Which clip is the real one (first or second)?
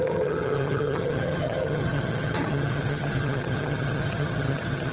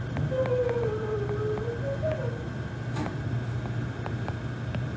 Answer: second